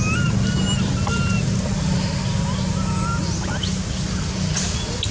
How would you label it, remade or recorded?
recorded